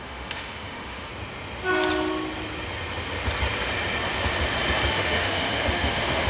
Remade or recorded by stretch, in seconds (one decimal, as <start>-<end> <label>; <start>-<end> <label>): 0.0-1.1 remade; 1.1-4.9 recorded; 4.9-6.3 remade